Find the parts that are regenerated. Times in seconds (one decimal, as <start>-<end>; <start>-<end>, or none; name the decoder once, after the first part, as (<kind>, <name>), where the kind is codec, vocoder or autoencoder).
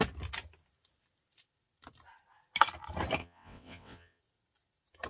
3.2-4.2 (vocoder, WaveNeXt)